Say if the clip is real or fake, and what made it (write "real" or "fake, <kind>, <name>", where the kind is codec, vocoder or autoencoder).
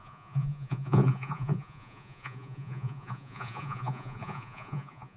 fake, vocoder, Vocos